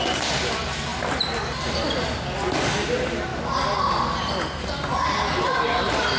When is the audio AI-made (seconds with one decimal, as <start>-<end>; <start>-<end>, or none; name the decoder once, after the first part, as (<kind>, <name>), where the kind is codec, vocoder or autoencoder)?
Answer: none